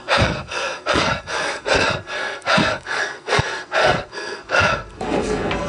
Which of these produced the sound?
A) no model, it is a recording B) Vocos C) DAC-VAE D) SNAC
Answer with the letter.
D